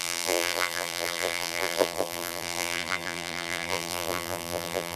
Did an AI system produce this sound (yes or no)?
yes